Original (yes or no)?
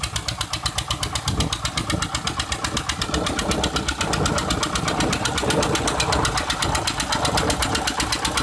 yes